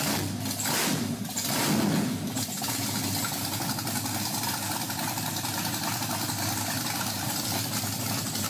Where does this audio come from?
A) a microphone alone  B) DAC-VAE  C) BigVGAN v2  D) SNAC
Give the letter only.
A